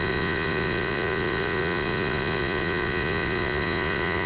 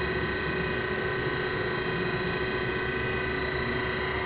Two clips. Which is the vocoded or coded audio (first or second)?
first